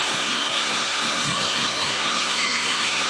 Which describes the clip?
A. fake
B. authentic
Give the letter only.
A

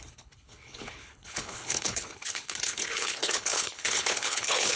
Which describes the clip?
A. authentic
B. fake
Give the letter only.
B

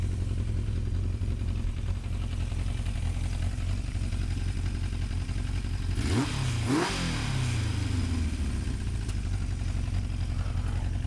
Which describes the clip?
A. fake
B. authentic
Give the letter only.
B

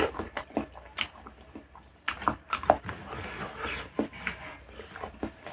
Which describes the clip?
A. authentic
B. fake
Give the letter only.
A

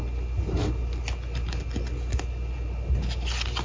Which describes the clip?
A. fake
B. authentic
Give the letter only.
B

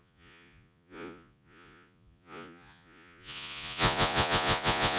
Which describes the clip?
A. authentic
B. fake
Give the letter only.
B